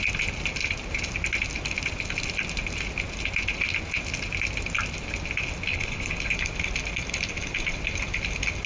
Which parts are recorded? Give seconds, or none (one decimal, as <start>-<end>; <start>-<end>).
0.0-5.7; 6.3-8.7